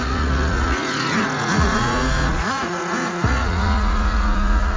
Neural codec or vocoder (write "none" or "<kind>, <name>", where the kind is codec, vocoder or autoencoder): vocoder, Vocos